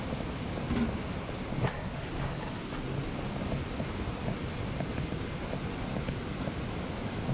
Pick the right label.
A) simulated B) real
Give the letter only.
B